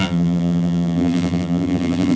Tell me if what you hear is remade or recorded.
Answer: remade